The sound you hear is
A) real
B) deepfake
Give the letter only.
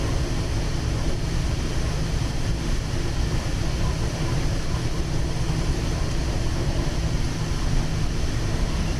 A